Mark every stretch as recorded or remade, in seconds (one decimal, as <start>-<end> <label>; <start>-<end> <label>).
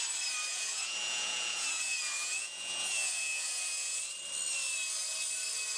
0.0-0.5 recorded; 0.5-4.0 remade; 4.0-5.8 recorded